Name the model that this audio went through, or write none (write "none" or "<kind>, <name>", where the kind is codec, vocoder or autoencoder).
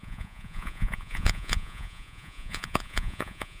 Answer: vocoder, Vocos